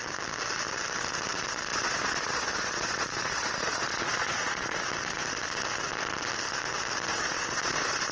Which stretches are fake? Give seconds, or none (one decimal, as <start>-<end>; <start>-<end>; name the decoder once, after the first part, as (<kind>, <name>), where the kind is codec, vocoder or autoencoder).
1.7-4.8 (vocoder, Vocos); 7.1-8.1